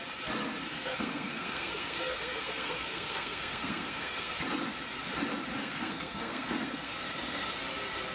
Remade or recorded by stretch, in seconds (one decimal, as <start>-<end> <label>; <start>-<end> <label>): 0.0-0.7 recorded; 0.7-4.3 remade; 4.3-5.6 recorded; 5.6-7.5 remade; 7.5-8.1 recorded